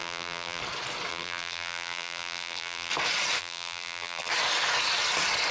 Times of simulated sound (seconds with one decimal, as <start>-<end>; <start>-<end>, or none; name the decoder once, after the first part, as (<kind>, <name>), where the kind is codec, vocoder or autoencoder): 0.0-0.6 (vocoder, BigVGAN v2); 1.1-2.9; 3.4-4.3